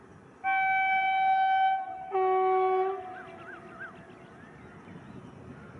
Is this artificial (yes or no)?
no